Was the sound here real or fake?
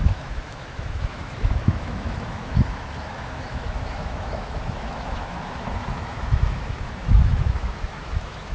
fake